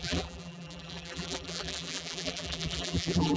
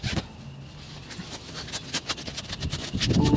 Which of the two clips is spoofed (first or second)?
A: first